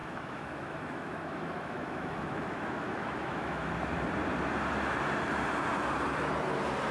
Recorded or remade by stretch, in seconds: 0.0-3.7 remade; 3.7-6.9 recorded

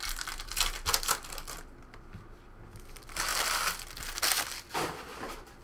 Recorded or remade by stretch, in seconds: 0.0-5.6 recorded

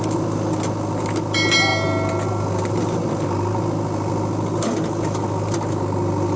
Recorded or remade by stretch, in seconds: 0.0-6.4 recorded

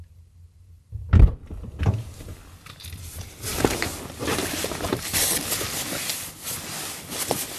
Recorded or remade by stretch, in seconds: 0.0-7.6 recorded

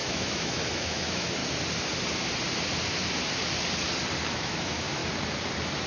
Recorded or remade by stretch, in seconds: 0.0-1.4 remade; 1.4-4.2 recorded; 4.2-5.0 remade; 5.0-5.9 recorded

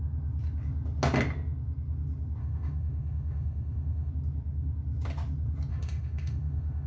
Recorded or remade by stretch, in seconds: 0.0-2.4 recorded; 2.4-4.1 remade; 4.1-5.7 recorded; 5.7-6.9 remade